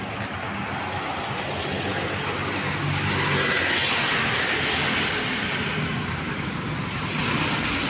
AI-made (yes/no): no